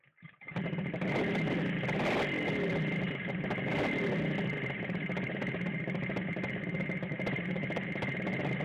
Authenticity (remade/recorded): recorded